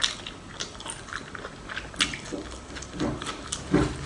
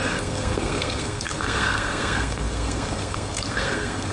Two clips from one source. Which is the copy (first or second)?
second